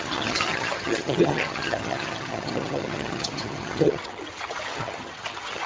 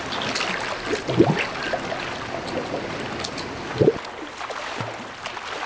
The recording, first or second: second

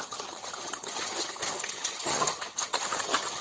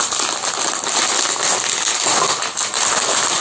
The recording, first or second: second